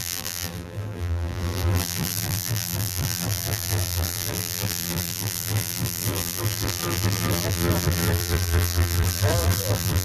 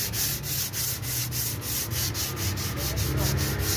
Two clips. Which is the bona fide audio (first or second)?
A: second